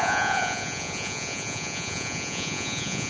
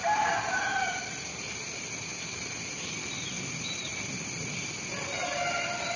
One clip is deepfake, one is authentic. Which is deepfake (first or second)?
first